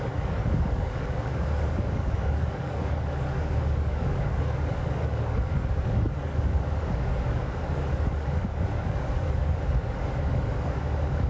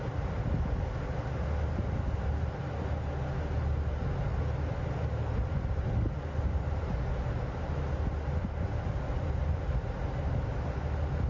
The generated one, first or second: first